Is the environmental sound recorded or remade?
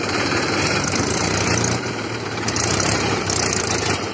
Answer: remade